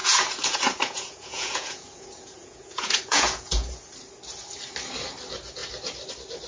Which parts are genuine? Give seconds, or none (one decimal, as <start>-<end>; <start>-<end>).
3.9-6.5